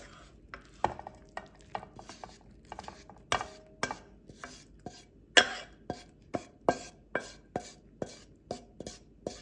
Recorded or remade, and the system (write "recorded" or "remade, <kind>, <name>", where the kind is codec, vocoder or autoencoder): recorded